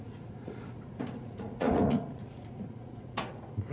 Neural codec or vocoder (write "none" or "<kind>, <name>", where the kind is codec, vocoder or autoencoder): vocoder, Vocos